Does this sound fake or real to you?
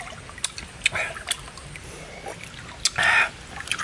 real